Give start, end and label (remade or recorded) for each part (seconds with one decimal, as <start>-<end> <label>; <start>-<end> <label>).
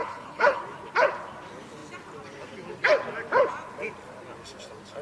0.0-0.6 remade; 0.6-5.0 recorded